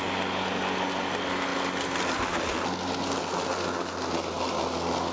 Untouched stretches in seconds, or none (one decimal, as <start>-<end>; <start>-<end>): 0.0-5.1